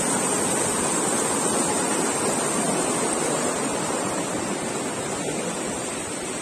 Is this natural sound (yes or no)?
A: yes